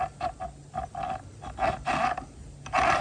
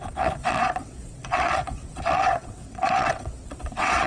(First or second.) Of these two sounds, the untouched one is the first